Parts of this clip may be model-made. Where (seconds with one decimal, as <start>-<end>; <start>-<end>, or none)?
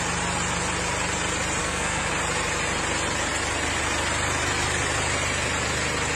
1.6-2.1